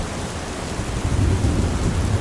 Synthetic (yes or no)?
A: no